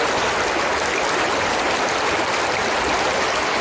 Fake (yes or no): no